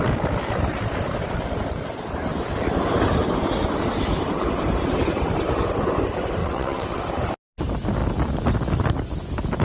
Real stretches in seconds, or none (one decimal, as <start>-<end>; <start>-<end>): 0.0-6.4; 7.0-9.6